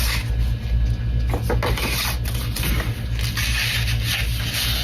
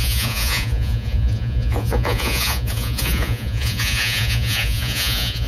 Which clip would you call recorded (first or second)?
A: first